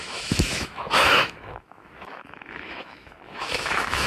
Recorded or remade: remade